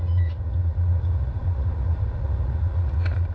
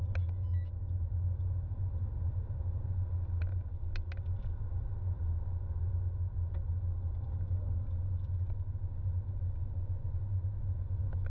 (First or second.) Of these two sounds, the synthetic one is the first